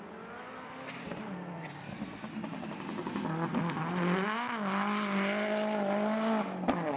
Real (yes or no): yes